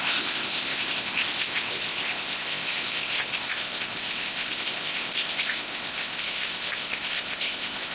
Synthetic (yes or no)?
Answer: yes